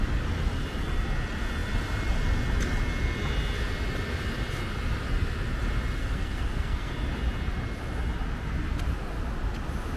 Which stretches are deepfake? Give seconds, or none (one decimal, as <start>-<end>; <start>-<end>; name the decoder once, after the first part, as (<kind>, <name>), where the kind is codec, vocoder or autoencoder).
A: 6.0-6.9 (codec, SNAC)